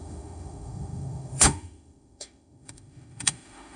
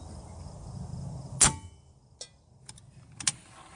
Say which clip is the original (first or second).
second